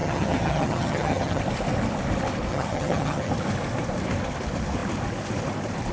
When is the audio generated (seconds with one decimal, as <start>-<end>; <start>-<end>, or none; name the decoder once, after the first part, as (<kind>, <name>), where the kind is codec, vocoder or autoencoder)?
0.0-1.4 (vocoder, HiFi-GAN); 2.5-3.3